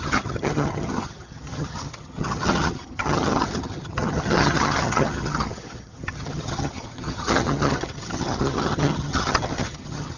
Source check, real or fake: fake